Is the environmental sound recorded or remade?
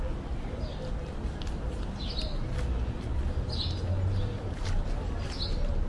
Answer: recorded